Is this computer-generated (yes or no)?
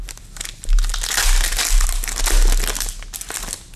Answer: no